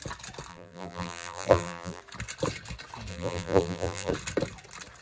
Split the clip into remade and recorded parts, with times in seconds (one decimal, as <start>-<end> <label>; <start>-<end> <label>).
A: 0.0-0.5 recorded; 0.5-2.0 remade; 2.0-3.1 recorded; 3.1-4.1 remade; 4.1-5.0 recorded